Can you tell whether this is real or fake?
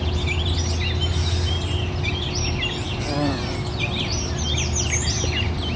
real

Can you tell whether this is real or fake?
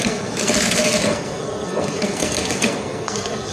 fake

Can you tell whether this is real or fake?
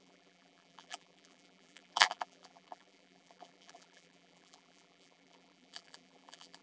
fake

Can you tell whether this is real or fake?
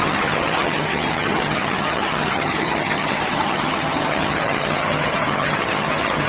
fake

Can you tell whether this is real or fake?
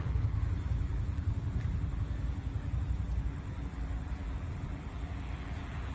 fake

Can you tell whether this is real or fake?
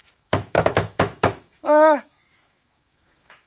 fake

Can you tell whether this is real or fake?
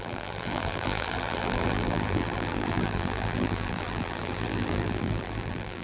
fake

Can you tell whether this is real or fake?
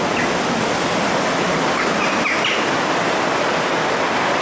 real